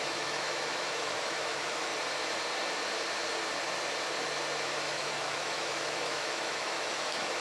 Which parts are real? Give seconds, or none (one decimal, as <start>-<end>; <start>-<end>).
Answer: 1.9-4.9